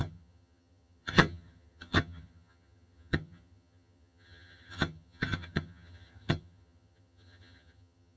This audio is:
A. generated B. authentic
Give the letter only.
A